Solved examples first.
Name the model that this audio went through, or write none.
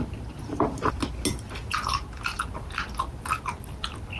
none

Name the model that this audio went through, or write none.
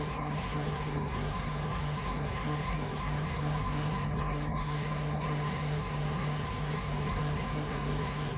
codec, SNAC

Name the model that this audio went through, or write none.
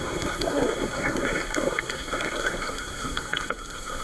codec, SNAC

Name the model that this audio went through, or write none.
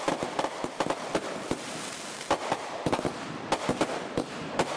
none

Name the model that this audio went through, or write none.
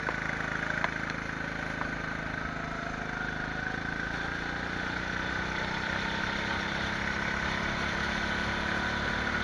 none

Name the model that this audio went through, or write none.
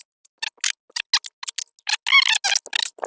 none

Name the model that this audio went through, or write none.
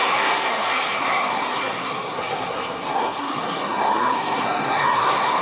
codec, SNAC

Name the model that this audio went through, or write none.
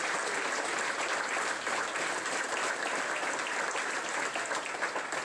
none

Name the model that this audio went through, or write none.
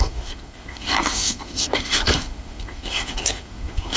codec, SNAC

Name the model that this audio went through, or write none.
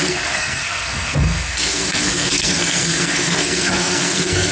codec, SNAC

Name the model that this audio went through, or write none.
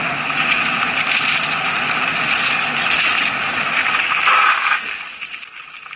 none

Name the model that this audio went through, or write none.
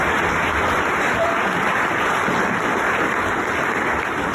none